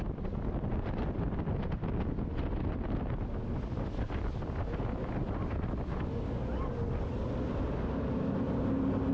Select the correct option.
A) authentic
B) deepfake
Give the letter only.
A